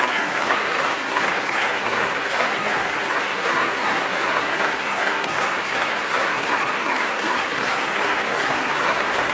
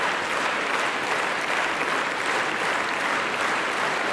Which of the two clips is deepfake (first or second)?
first